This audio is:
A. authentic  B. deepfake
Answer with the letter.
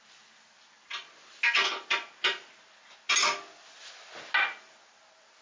A